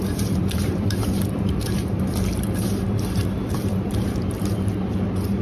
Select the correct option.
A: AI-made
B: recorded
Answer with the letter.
A